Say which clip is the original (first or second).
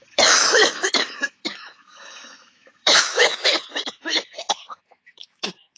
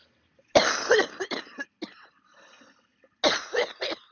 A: second